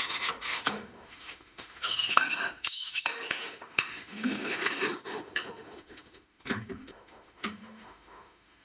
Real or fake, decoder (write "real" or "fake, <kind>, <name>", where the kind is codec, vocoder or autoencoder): fake, autoencoder, DAC-VAE